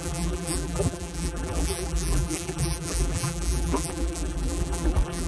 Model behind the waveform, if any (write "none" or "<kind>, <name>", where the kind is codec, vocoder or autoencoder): vocoder, BigVGAN v2